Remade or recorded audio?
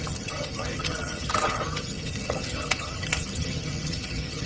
remade